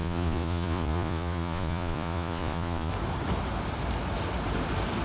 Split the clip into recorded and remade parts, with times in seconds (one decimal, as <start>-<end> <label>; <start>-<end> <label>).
0.0-2.9 remade; 2.9-5.0 recorded